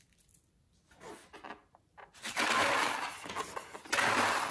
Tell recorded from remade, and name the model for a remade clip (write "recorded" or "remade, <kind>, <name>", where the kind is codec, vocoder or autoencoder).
recorded